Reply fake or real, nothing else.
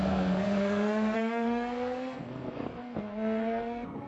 fake